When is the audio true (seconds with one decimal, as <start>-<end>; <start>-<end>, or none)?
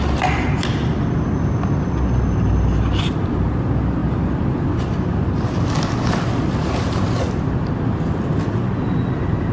0.0-9.5